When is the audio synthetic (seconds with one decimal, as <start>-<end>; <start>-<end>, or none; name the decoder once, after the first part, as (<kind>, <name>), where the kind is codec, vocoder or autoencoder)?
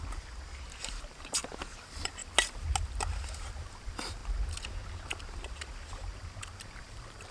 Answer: 0.0-2.2 (vocoder, BigVGAN v2); 2.9-4.2; 5.4-6.1; 6.8-7.3